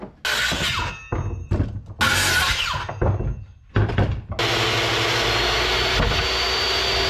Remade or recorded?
recorded